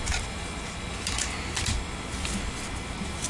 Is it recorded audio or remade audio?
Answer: recorded